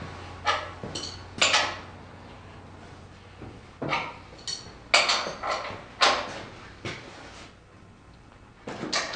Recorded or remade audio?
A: recorded